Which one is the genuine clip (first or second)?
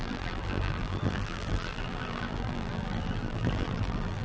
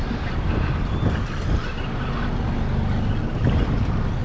second